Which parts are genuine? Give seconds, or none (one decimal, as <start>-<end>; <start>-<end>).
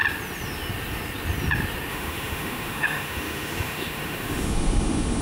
0.0-1.9